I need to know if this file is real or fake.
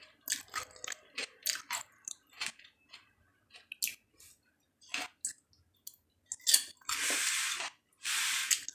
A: real